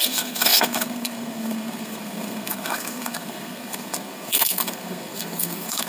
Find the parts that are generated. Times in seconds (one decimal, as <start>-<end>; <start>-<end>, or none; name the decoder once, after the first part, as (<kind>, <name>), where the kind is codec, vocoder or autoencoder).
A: 0.0-5.9 (codec, SNAC)